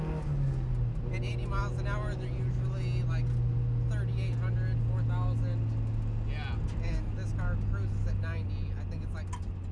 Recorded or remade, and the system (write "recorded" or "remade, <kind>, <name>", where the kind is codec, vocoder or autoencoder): recorded